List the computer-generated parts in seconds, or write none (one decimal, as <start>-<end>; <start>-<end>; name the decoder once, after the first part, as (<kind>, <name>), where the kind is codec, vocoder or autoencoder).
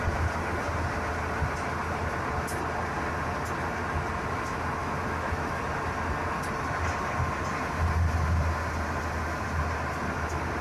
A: 4.8-5.6 (autoencoder, DAC-VAE)